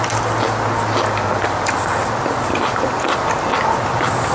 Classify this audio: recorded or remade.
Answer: recorded